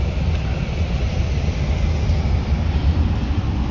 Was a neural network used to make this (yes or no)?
no